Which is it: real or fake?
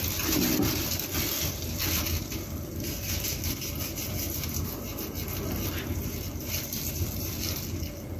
real